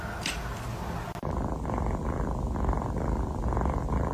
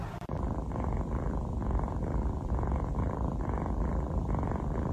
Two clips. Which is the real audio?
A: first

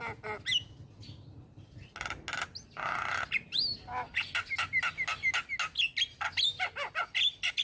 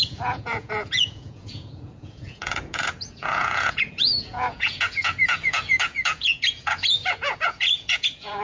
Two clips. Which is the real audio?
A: first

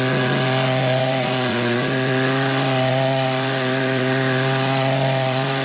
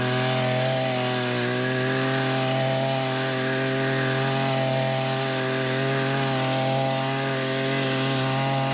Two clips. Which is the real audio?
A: second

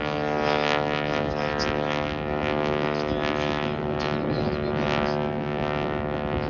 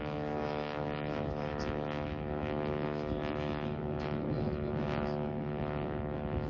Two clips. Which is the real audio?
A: first